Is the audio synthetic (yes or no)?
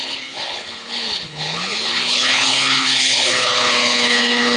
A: yes